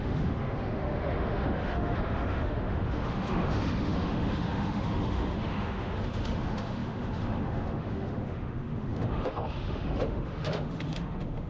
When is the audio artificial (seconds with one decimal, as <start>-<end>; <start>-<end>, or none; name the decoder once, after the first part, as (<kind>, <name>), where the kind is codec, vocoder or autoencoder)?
0.0-11.5 (autoencoder, DAC-VAE)